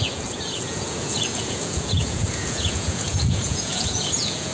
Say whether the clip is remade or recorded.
remade